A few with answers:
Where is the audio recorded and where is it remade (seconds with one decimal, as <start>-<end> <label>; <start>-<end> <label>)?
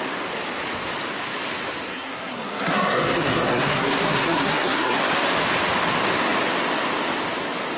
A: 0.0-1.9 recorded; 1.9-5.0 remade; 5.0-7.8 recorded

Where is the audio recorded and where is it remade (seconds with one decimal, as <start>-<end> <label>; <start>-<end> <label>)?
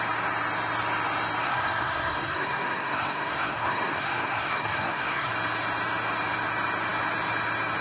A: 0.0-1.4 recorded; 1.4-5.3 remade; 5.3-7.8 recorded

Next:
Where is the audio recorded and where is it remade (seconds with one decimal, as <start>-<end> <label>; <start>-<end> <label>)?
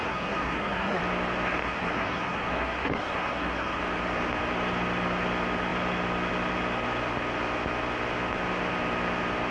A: 0.0-1.0 remade; 1.0-1.6 recorded; 1.6-3.8 remade; 3.8-9.5 recorded